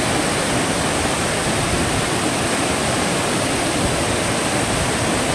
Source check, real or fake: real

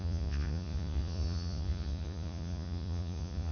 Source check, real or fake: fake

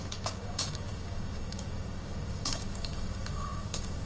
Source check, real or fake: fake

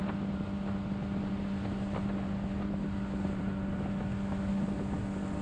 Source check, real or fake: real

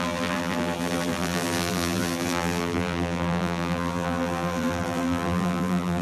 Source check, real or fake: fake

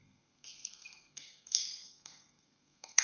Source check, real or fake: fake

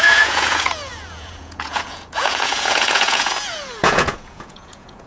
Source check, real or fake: fake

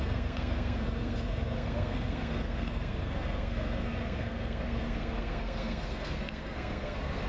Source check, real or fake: fake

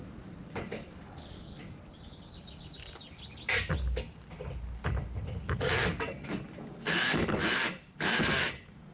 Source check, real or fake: real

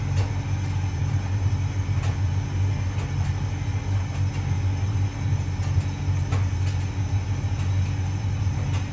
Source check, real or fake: real